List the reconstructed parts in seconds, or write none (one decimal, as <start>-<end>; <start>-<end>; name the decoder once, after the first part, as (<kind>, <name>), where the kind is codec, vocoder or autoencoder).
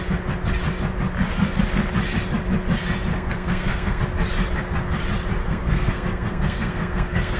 3.1-4.0 (codec, SNAC); 5.4-7.4